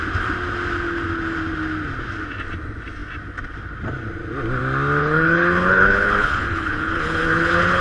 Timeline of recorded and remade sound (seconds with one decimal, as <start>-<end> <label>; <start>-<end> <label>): 0.0-5.0 recorded; 5.0-7.8 remade